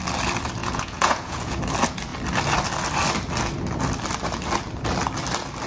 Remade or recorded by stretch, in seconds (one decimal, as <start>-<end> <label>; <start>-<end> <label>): 0.0-0.6 recorded; 0.6-1.6 remade; 1.6-5.7 recorded